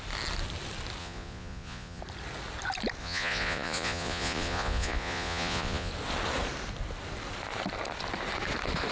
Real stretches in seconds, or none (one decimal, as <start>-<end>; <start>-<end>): 0.0-1.0; 2.0-3.0; 5.9-8.9